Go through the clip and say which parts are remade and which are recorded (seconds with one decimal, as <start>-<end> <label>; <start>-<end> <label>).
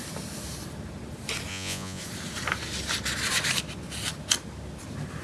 0.0-1.5 recorded; 1.5-2.0 remade; 2.0-5.2 recorded